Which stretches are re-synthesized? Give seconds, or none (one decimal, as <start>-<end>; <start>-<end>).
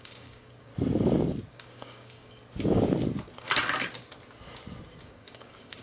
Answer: 0.0-0.7; 1.5-2.4; 5.0-5.8